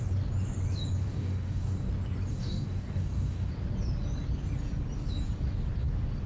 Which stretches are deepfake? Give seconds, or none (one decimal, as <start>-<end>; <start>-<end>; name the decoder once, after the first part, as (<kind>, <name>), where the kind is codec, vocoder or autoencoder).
1.0-1.9 (codec, DAC); 2.3-3.5